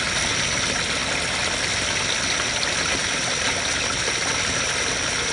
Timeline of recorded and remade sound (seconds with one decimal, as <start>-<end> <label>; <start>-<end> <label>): 0.0-5.3 recorded

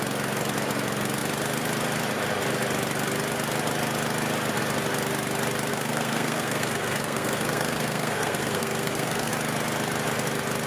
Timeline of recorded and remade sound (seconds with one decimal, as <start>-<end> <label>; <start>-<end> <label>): 0.0-5.7 recorded; 5.7-9.3 remade; 9.3-10.7 recorded

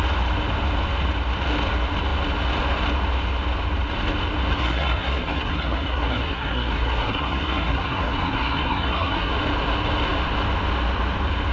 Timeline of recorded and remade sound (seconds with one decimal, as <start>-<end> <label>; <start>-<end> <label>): 0.0-4.5 recorded; 4.5-9.3 remade; 9.3-11.5 recorded

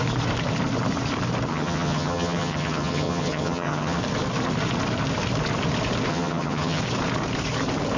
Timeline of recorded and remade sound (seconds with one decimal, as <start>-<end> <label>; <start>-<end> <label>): 0.0-1.5 recorded; 1.5-4.0 remade; 4.0-6.1 recorded; 6.1-6.8 remade; 6.8-8.0 recorded

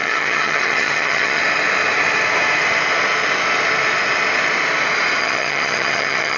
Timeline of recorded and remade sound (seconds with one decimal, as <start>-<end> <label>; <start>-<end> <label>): 0.0-1.4 remade; 1.4-5.2 recorded; 5.2-6.4 remade

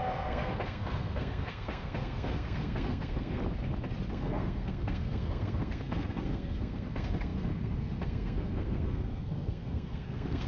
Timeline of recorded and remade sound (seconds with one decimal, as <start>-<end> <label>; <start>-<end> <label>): 0.0-3.4 remade; 3.4-4.1 recorded; 4.1-10.5 remade

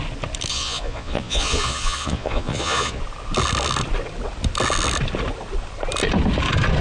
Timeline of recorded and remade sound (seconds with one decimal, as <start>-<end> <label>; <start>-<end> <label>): 0.0-0.5 recorded; 0.5-3.0 remade; 3.0-6.8 recorded

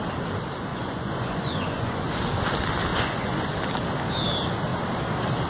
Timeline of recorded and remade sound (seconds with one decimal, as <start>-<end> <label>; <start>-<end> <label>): 0.0-0.7 recorded; 0.7-2.1 remade; 2.1-2.9 recorded; 2.9-3.5 remade; 3.5-5.5 recorded